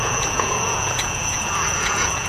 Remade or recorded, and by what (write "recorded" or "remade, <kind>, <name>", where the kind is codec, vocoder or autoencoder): remade, vocoder, Vocos